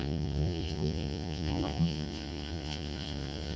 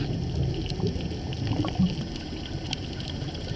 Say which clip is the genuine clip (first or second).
second